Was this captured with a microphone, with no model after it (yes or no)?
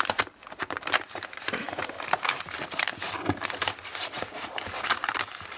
no